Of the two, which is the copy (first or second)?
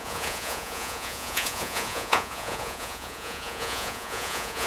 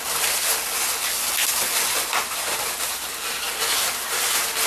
first